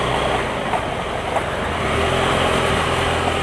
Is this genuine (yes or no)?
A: yes